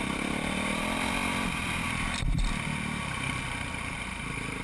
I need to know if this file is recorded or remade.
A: remade